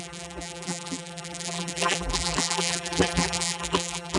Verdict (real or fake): fake